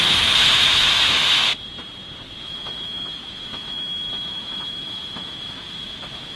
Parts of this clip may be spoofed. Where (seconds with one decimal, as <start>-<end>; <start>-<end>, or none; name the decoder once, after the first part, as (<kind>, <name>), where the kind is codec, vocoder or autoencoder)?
0.0-1.5 (autoencoder, DAC-VAE); 2.4-6.4